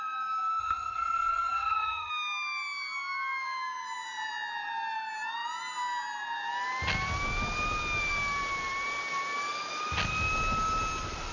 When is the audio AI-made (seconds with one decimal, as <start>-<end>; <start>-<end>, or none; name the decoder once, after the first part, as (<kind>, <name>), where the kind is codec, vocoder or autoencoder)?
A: 0.6-2.1 (vocoder, HiFi-GAN)